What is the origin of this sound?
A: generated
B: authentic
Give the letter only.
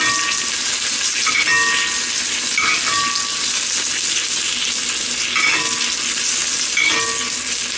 B